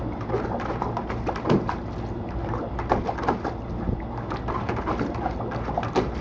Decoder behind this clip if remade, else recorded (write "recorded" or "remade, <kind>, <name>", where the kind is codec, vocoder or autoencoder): recorded